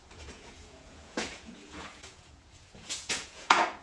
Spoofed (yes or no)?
yes